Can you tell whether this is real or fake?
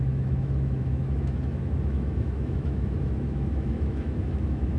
fake